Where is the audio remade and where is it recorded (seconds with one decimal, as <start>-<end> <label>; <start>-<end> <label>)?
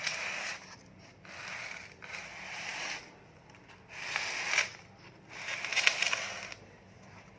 0.0-7.4 recorded